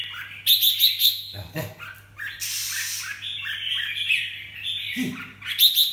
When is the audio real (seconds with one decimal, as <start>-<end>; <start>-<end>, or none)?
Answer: 0.0-1.0; 1.8-5.9